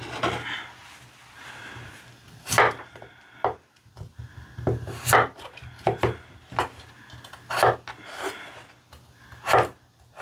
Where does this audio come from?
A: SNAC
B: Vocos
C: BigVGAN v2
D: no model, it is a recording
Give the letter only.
D